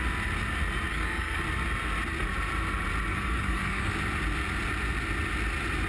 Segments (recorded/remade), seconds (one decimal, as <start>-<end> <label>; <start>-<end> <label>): 0.0-0.9 recorded; 0.9-1.4 remade; 1.4-3.1 recorded; 3.1-3.9 remade; 3.9-5.9 recorded